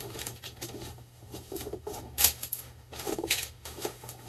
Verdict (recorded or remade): remade